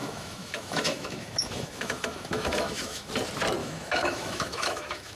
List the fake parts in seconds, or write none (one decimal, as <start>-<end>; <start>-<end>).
0.0-3.1; 3.6-5.2